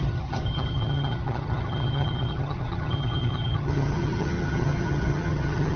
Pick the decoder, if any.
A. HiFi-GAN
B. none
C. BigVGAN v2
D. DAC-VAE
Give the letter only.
A